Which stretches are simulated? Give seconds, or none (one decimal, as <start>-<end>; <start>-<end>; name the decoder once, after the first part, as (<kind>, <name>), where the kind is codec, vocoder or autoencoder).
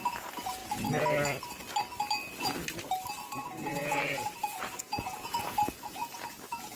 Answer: 0.0-0.6 (vocoder, Vocos); 3.1-6.8